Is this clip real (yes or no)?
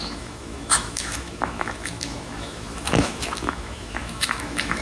no